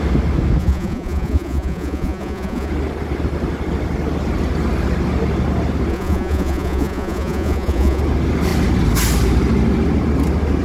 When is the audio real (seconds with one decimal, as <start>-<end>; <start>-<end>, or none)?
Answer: 0.0-0.6; 2.7-5.9; 8.0-10.6